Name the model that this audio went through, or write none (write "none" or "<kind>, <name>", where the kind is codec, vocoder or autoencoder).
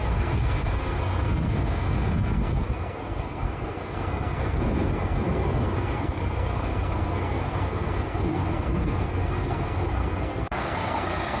codec, SNAC